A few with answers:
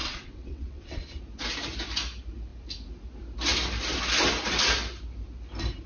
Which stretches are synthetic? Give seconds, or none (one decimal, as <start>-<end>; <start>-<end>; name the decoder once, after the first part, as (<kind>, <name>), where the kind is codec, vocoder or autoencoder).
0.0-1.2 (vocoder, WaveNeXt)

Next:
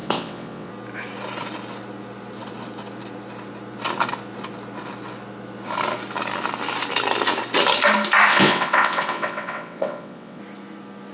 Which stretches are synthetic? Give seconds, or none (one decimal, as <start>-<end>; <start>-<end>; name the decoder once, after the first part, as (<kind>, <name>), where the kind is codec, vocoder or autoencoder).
0.0-0.7 (vocoder, WaveNeXt); 8.3-10.4

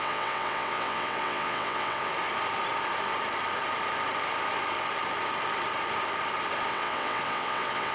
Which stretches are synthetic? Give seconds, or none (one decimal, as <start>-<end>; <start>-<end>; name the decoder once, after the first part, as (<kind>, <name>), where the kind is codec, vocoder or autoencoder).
0.0-2.1 (vocoder, WaveNeXt); 6.7-7.9

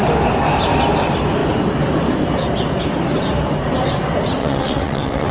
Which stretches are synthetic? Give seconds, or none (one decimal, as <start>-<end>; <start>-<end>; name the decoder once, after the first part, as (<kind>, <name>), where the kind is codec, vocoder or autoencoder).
4.4-5.3 (vocoder, WaveNeXt)

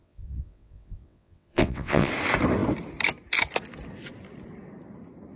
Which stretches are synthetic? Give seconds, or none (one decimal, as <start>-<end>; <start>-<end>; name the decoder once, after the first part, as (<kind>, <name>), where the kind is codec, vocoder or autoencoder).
0.0-2.1 (vocoder, WaveNeXt)

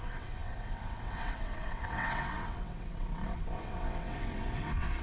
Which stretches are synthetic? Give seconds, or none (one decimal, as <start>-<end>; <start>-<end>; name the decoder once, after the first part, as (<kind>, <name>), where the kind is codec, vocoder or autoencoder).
0.0-5.0 (vocoder, WaveNeXt)

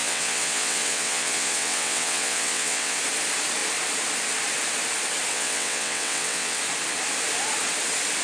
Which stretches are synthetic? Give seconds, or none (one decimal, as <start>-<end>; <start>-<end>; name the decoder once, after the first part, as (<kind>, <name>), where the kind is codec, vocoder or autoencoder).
0.0-3.0 (vocoder, WaveNeXt); 5.3-6.6

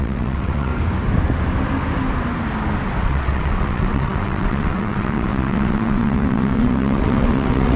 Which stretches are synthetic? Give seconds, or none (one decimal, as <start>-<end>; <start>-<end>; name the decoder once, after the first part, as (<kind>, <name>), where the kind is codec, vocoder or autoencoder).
0.0-0.7 (vocoder, WaveNeXt); 3.0-7.8